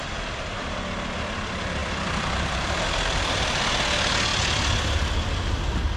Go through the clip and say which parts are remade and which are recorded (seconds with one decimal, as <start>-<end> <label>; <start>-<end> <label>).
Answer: 0.0-0.5 remade; 0.5-1.8 recorded; 1.8-3.6 remade; 3.6-6.0 recorded